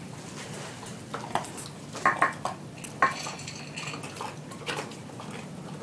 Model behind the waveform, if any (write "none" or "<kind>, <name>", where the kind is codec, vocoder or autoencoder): none